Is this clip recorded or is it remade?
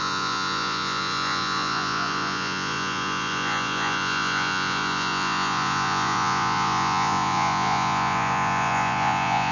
remade